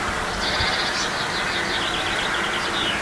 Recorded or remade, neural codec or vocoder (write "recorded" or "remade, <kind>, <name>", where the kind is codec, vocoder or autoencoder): recorded